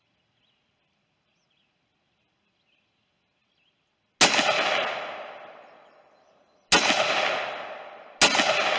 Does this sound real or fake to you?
real